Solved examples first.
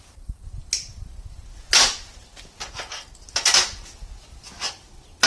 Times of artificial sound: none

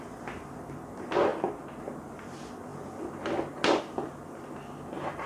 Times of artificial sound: none